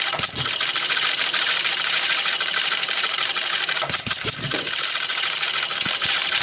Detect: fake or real fake